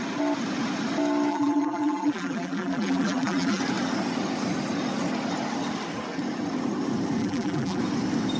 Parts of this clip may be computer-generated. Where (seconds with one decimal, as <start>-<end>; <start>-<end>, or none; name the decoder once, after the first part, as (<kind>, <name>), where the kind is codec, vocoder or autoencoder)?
1.3-3.6 (vocoder, BigVGAN v2); 7.2-7.8